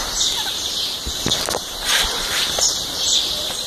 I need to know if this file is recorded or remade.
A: remade